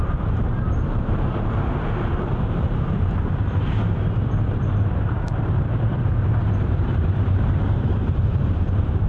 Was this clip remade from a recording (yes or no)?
yes